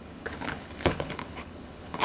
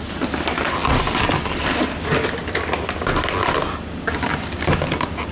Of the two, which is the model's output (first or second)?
first